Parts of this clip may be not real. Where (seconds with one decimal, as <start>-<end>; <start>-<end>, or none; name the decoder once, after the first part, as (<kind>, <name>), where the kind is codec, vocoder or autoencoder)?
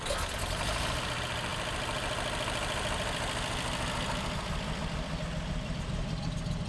none